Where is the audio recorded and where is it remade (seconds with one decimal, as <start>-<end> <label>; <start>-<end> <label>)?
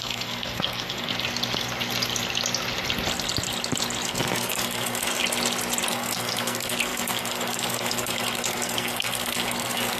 0.0-1.1 remade; 1.1-4.1 recorded; 4.1-5.2 remade; 5.2-5.9 recorded; 5.9-10.0 remade